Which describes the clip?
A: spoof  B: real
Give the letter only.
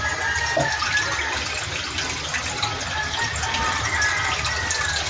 B